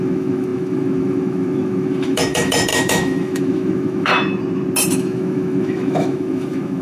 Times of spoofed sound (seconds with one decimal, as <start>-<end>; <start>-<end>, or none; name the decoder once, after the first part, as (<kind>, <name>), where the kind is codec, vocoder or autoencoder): 0.0-4.1 (autoencoder, DAC-VAE); 4.9-6.8